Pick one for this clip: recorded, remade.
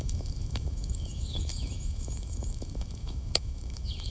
remade